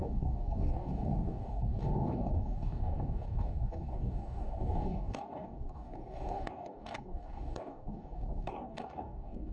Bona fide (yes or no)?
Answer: no